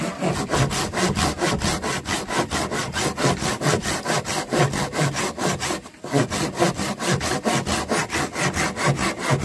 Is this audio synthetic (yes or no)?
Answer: no